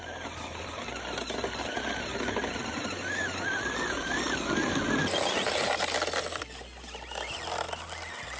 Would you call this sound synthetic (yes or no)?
no